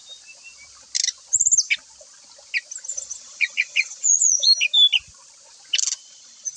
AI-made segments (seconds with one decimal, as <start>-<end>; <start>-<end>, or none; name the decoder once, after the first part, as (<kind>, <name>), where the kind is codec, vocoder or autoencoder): 2.9-4.5 (vocoder, Vocos); 6.0-6.6